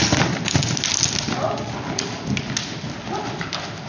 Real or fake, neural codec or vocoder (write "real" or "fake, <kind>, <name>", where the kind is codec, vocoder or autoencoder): real